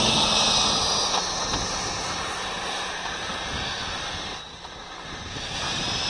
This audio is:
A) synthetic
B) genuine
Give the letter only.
B